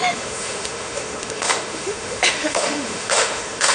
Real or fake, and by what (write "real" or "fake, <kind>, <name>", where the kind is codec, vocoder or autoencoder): fake, autoencoder, DAC-VAE